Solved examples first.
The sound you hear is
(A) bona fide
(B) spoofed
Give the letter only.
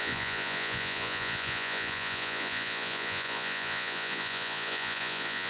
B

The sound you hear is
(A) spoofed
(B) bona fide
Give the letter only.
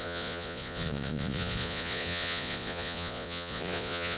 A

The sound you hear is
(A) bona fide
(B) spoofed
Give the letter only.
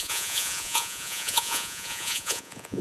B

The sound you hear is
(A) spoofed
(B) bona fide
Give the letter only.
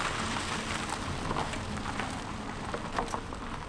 B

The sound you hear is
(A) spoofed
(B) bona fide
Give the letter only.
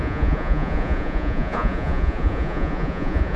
A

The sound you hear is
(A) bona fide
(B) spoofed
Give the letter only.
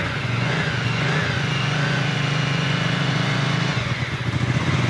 B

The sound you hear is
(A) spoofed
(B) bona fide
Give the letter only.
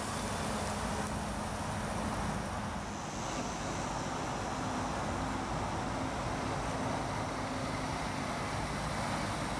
B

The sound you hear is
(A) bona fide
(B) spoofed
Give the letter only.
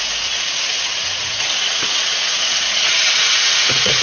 B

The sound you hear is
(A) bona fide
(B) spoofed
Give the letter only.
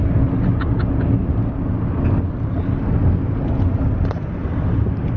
A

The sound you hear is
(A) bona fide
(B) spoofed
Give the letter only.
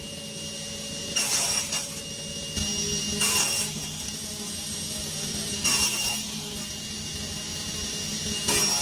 A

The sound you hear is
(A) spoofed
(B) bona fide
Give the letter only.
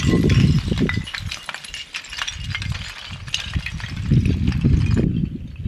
B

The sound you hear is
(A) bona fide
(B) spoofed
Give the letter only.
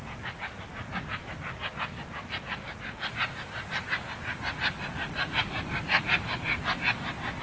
A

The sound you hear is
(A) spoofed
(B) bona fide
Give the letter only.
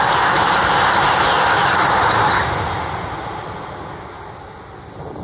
B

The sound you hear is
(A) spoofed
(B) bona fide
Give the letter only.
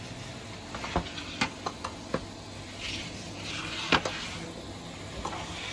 B